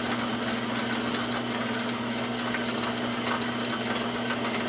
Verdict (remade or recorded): recorded